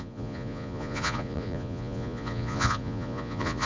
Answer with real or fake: fake